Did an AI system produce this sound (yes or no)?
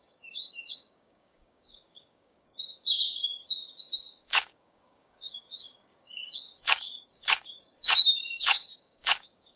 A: yes